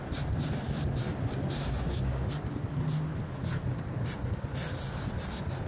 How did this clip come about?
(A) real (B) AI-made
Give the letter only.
A